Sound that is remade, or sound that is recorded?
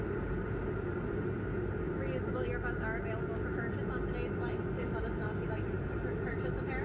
recorded